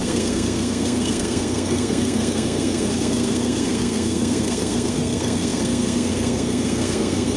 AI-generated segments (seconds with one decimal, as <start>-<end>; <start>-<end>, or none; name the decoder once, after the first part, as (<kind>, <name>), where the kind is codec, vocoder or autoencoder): 0.0-7.4 (codec, SNAC)